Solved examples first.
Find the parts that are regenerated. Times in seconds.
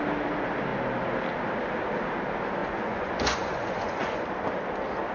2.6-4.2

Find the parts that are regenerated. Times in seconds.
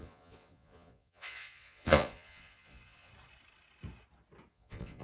0.0-3.1; 4.5-5.0